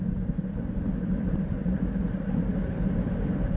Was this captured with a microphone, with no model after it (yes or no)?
yes